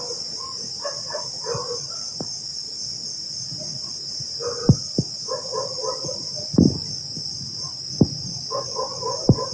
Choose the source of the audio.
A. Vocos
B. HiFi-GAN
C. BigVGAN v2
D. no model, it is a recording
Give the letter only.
D